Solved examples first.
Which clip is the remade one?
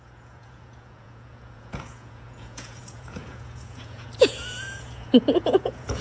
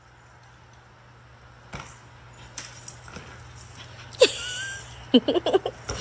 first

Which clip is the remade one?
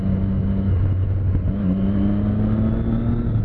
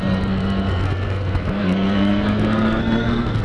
second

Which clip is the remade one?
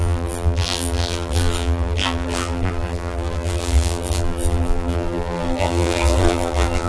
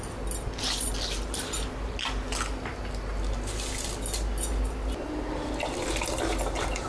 first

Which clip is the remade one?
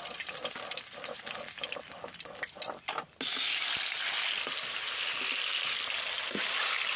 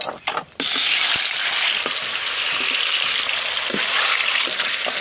second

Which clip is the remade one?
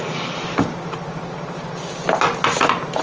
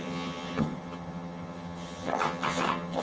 second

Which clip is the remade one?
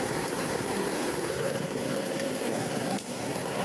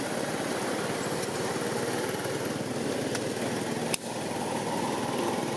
first